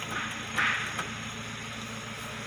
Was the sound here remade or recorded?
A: recorded